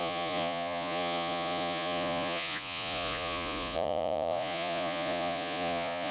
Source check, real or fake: fake